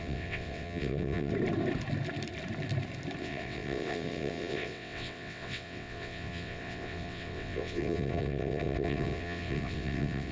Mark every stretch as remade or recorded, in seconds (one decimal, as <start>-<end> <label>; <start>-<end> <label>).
0.0-1.3 remade; 1.3-3.2 recorded; 3.2-10.3 remade